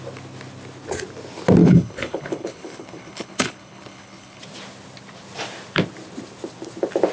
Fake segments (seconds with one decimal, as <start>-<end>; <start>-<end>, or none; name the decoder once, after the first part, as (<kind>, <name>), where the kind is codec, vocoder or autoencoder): 1.6-4.4 (codec, HILCodec)